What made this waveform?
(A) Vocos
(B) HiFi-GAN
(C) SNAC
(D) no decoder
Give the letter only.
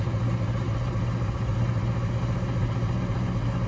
D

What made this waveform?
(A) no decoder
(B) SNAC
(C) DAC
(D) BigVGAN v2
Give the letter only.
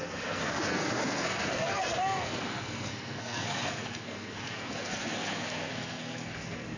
B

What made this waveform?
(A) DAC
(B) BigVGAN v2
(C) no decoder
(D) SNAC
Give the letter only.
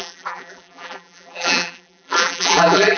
B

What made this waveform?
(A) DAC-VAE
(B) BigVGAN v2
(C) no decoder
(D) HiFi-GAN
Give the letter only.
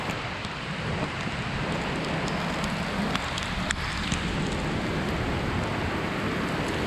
C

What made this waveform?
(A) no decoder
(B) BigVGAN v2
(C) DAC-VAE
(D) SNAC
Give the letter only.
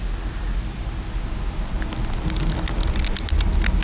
A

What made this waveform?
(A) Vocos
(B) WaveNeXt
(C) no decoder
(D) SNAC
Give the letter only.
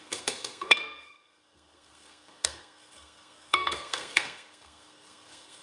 D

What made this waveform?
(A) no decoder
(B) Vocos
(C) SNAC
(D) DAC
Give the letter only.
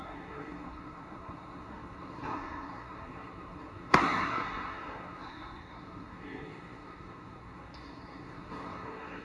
C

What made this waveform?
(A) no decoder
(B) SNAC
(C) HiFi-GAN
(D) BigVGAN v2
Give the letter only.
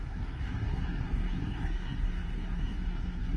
B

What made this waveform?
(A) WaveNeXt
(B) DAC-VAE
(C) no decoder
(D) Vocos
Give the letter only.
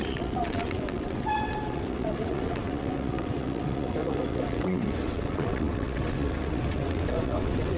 A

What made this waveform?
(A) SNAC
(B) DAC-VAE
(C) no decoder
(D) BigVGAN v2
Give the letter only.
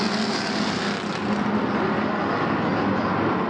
C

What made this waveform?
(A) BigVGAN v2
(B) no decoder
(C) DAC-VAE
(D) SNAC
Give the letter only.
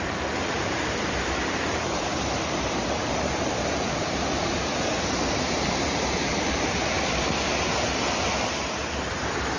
A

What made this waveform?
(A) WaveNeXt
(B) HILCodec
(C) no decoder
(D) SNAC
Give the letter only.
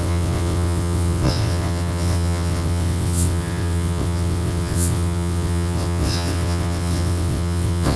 A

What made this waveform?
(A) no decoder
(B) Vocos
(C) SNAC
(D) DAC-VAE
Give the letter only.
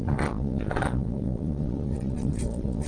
B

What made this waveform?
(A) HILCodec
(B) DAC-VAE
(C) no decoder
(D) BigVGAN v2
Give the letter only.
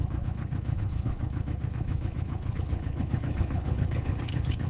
A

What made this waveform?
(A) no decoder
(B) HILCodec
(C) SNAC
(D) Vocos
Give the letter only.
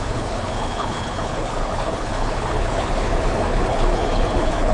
B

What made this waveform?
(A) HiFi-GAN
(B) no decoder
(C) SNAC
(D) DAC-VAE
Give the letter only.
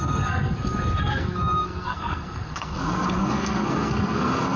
C